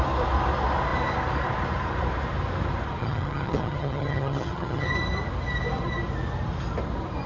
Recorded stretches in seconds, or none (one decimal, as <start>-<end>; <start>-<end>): 0.0-3.0; 4.9-7.3